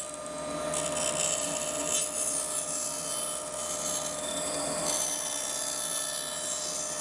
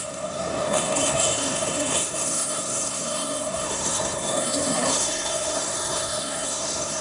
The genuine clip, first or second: first